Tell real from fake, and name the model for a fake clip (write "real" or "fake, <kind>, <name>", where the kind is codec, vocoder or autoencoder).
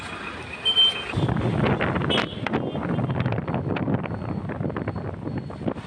real